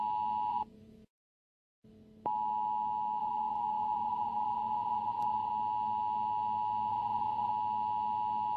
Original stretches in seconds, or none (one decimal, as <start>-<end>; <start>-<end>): 0.0-0.5; 1.3-3.2; 5.5-6.9; 7.5-8.6